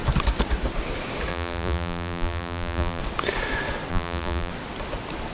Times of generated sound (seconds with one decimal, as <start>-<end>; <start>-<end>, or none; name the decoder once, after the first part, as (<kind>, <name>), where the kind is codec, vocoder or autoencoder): 1.3-3.0 (vocoder, BigVGAN v2); 3.9-4.5